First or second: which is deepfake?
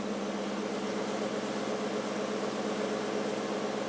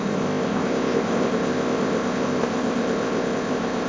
second